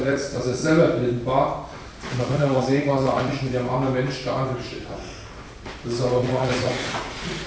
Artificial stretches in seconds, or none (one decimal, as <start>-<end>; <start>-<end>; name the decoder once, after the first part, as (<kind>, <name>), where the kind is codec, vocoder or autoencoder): 0.0-0.6 (vocoder, Vocos); 2.2-3.5; 6.2-7.5